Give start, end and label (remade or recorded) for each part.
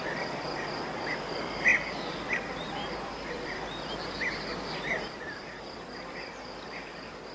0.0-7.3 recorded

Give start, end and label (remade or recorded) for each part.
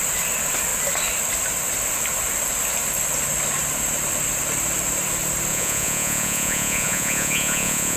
0.0-5.5 recorded; 5.5-8.0 remade